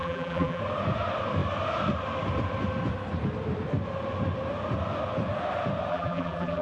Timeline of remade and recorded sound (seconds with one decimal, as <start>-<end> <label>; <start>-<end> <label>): 0.0-0.6 remade; 0.6-5.9 recorded; 5.9-6.6 remade